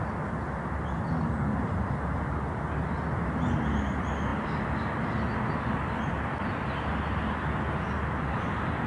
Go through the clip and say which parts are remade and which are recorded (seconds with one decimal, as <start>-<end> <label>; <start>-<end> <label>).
0.0-8.9 recorded